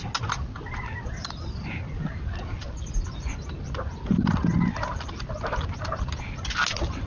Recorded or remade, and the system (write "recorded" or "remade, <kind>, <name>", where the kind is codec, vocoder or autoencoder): recorded